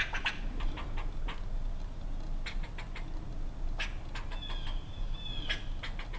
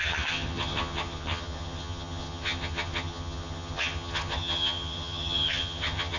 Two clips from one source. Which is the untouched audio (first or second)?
first